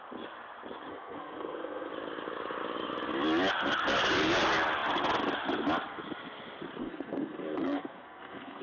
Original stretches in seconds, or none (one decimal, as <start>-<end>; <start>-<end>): 0.0-0.9; 1.9-6.8